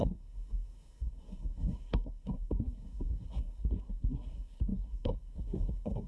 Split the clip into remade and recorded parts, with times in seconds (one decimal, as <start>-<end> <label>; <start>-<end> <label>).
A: 0.0-6.1 remade